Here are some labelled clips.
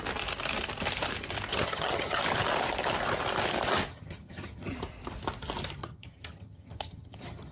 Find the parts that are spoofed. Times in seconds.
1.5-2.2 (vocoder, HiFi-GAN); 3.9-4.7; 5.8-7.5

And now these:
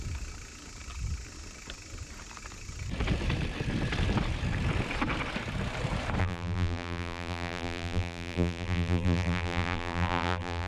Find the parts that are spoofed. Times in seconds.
6.2-10.7 (vocoder, BigVGAN v2)

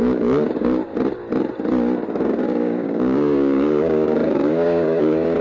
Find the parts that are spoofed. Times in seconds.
0.0-0.8 (codec, DAC); 2.1-5.4